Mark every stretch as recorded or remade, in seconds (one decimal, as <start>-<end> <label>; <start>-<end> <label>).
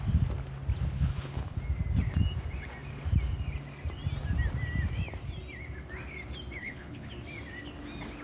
0.0-0.9 recorded; 0.9-1.6 remade; 1.6-6.6 recorded; 6.6-7.1 remade; 7.1-8.2 recorded